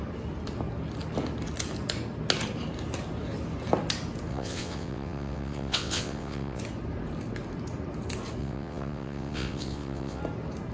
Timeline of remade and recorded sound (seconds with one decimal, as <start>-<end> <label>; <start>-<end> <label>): 0.0-4.3 recorded; 4.3-6.6 remade; 6.6-8.4 recorded; 8.4-10.2 remade; 10.2-10.7 recorded